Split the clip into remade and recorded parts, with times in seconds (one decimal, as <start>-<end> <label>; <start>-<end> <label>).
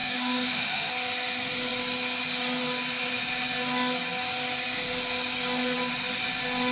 0.0-0.9 remade; 0.9-6.7 recorded